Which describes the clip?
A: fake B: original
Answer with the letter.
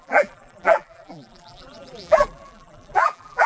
A